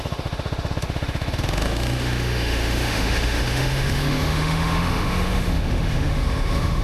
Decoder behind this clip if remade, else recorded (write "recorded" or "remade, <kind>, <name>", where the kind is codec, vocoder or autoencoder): remade, autoencoder, DAC-VAE